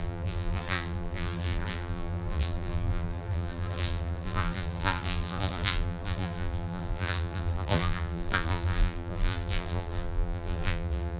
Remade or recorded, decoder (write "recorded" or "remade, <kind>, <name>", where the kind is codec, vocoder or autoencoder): remade, vocoder, BigVGAN v2